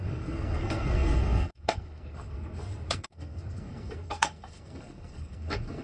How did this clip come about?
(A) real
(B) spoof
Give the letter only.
B